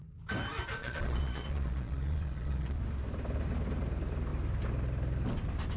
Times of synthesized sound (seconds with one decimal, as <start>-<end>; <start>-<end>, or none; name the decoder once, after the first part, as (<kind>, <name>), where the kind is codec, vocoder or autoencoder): 0.8-2.8 (vocoder, Vocos)